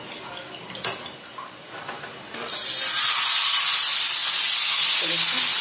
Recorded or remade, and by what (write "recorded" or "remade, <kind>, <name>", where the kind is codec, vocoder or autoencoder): recorded